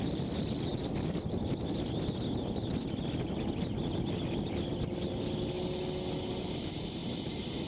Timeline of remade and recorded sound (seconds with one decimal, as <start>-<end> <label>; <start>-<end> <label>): 0.0-7.7 recorded